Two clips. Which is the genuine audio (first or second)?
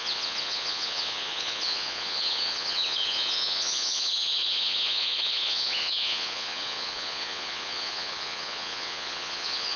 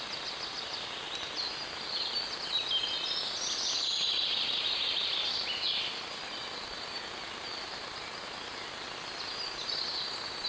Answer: second